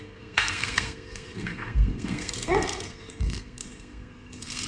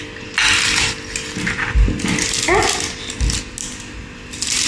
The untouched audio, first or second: second